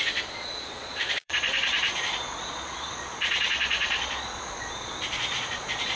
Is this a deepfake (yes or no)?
yes